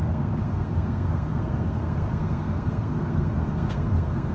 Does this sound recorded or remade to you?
remade